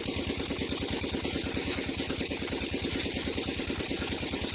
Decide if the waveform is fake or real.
fake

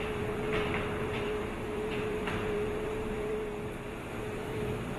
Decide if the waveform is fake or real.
fake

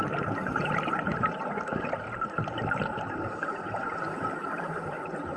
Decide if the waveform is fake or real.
fake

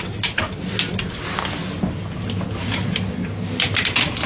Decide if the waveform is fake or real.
real